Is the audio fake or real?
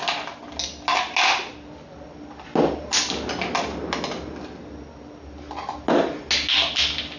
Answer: real